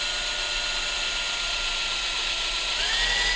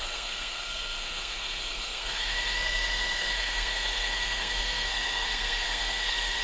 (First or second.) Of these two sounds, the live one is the first